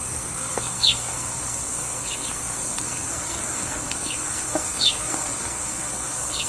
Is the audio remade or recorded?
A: remade